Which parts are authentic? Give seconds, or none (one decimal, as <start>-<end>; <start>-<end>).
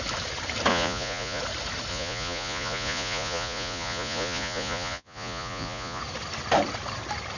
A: 0.0-0.7; 1.4-1.9; 6.0-7.4